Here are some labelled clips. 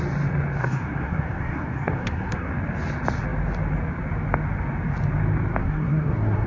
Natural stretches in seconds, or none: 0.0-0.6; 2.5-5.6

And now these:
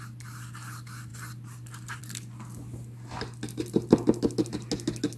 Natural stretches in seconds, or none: 0.0-5.2